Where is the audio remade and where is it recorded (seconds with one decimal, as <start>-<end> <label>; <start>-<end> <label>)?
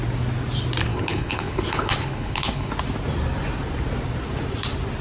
0.0-0.9 recorded; 0.9-2.7 remade; 2.7-5.0 recorded